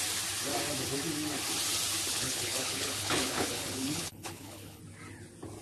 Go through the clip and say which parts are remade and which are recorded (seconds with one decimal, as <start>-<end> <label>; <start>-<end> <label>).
0.0-2.1 recorded; 2.1-4.8 remade; 4.8-5.6 recorded